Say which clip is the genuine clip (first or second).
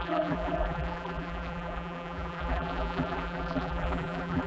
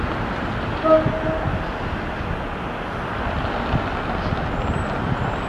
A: second